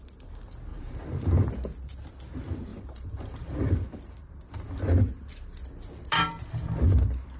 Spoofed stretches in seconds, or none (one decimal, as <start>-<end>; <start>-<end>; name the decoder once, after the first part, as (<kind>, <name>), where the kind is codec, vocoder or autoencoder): 0.7-1.5 (vocoder, BigVGAN v2); 2.7-4.3